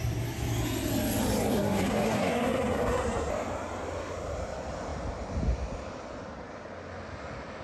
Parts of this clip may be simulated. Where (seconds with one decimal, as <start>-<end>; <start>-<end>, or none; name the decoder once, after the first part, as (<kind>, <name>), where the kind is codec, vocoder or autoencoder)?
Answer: 1.5-3.3 (codec, SNAC)

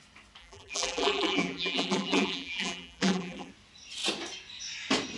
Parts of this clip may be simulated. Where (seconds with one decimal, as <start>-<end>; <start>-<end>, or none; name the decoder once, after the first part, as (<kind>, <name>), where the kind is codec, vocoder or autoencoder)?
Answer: 0.4-3.5 (vocoder, BigVGAN v2)

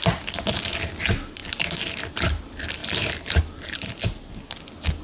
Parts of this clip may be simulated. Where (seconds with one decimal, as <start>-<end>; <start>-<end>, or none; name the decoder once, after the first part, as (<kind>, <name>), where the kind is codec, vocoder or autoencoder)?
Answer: none